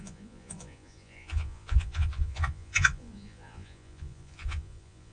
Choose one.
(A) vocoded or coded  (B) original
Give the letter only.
A